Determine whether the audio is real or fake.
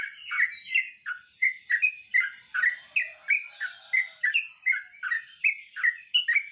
real